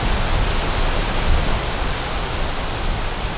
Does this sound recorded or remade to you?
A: recorded